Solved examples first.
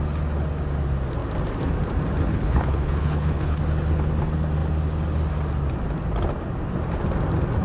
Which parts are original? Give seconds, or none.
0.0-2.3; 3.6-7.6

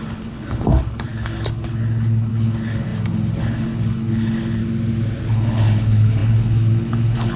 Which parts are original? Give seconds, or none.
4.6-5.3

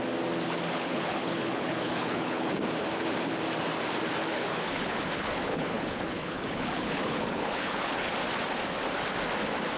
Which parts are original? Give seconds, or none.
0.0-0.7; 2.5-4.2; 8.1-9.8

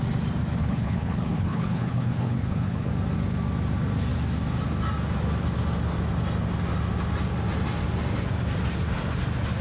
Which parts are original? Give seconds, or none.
0.0-0.6; 2.9-9.6

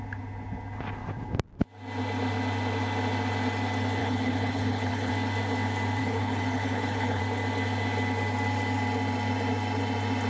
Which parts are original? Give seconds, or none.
0.0-4.0; 5.1-6.0; 7.2-10.3

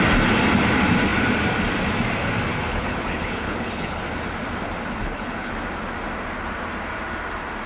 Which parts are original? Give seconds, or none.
0.0-2.7; 4.0-5.0; 5.5-7.7

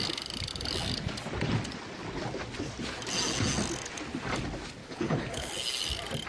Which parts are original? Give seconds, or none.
0.0-4.8; 5.5-6.3